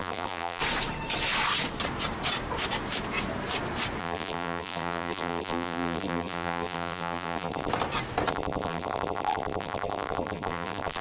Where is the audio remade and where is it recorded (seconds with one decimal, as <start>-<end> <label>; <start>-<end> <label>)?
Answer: 0.0-0.6 remade; 0.6-4.0 recorded; 4.0-7.7 remade; 7.7-8.3 recorded; 8.3-11.0 remade